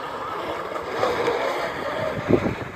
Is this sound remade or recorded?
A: remade